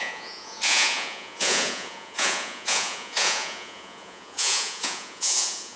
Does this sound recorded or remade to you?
remade